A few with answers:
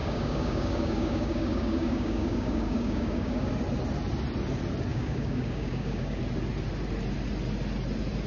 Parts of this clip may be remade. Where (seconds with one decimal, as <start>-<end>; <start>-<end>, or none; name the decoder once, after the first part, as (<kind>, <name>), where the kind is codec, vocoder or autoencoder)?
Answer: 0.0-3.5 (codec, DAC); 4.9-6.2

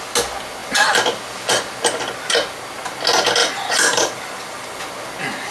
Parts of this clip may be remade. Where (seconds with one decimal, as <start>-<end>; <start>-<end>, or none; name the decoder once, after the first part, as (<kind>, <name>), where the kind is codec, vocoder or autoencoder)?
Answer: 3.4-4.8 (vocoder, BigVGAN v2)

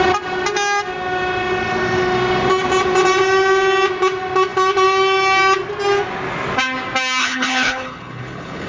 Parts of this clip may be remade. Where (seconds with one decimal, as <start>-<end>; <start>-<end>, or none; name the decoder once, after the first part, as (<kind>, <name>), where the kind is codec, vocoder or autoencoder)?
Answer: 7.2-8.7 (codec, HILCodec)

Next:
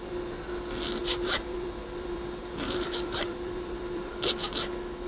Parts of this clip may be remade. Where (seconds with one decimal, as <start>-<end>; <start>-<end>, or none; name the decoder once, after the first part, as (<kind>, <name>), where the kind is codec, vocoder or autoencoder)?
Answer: 1.0-4.1 (vocoder, BigVGAN v2)

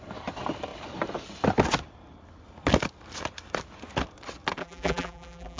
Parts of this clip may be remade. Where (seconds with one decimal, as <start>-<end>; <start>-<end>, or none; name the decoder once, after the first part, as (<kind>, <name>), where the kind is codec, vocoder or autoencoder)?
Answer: 4.6-5.6 (vocoder, BigVGAN v2)